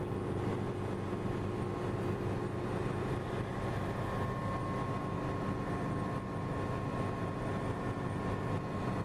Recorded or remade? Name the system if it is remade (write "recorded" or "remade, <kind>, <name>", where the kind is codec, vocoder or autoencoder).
recorded